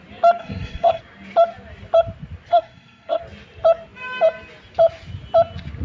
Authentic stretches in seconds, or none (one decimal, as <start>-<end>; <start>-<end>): 0.0-0.4; 1.0-2.5; 3.2-5.8